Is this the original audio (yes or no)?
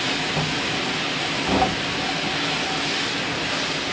yes